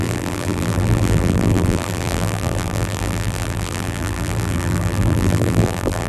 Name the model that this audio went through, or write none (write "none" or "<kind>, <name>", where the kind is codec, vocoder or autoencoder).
vocoder, BigVGAN v2